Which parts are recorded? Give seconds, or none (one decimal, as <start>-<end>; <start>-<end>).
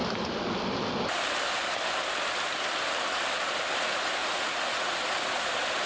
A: 0.0-4.2; 4.9-5.9